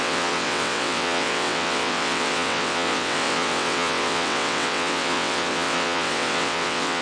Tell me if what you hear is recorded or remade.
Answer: remade